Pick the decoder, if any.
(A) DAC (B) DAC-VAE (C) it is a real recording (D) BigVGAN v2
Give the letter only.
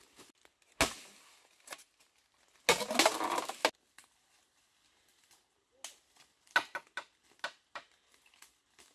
C